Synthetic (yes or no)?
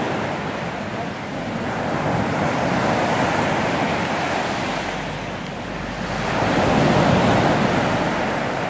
no